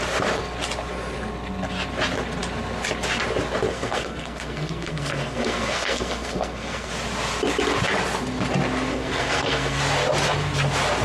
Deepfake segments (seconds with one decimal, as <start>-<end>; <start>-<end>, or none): 3.7-6.9; 8.9-9.8